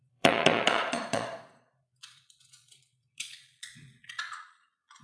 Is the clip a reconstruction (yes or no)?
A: yes